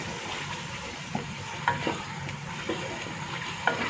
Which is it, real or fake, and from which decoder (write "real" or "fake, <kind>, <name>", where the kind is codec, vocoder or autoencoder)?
real